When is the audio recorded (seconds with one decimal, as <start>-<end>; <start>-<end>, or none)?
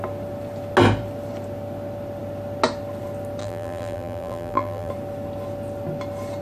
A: 0.0-3.4; 4.9-6.4